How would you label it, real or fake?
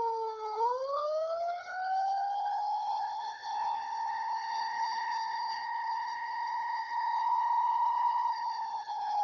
fake